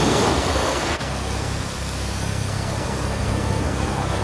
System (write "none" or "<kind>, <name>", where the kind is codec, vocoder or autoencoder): codec, SNAC